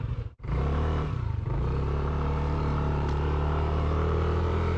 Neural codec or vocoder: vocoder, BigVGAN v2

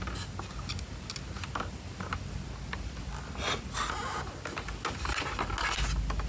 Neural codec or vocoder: none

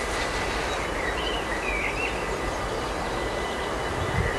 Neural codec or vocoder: vocoder, BigVGAN v2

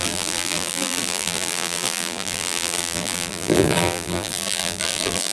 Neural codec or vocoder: vocoder, BigVGAN v2